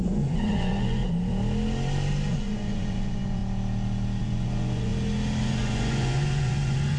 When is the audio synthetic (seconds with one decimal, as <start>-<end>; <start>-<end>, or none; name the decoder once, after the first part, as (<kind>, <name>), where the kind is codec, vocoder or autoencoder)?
0.0-1.0 (vocoder, Vocos); 2.3-3.4; 4.2-4.9; 5.4-7.0